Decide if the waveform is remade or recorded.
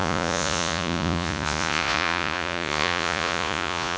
remade